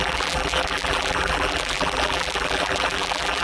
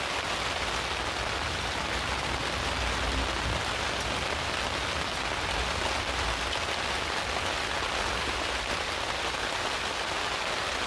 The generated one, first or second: first